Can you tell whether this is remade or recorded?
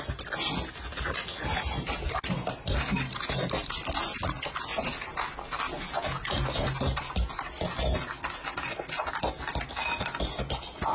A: recorded